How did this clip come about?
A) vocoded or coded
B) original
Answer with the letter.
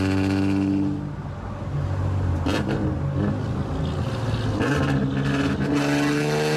B